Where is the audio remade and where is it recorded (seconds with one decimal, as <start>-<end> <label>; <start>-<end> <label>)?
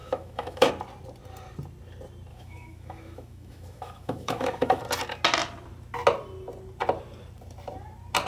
0.0-0.7 remade; 0.7-2.3 recorded; 2.3-4.8 remade; 4.8-8.3 recorded